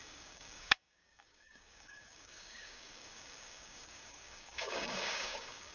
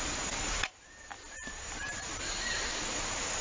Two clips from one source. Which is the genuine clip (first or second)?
second